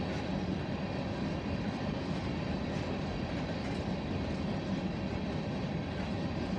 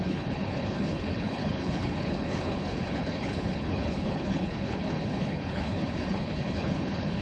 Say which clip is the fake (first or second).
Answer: second